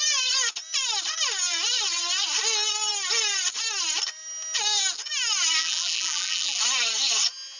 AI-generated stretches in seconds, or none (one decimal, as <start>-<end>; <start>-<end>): 5.6-6.6